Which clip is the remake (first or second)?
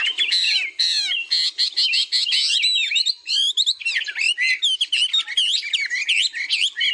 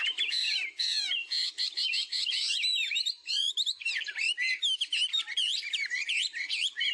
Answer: second